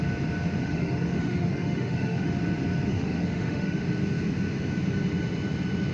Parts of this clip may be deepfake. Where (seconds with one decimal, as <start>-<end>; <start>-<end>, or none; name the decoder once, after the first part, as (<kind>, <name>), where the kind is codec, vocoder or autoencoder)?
0.6-2.4 (autoencoder, DAC-VAE); 2.9-3.8